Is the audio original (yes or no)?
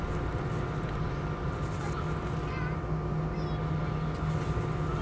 yes